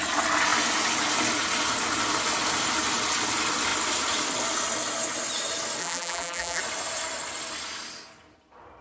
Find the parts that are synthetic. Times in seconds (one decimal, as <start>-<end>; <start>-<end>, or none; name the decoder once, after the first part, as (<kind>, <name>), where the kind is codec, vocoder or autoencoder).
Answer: 5.8-6.6 (vocoder, BigVGAN v2)